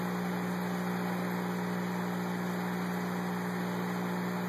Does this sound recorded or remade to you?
recorded